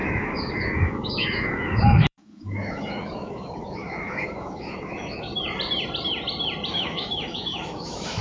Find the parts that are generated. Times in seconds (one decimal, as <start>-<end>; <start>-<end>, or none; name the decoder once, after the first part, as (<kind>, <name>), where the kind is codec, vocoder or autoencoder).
0.0-5.3 (autoencoder, DAC-VAE); 6.7-8.2